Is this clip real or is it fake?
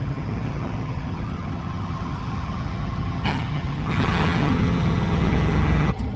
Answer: fake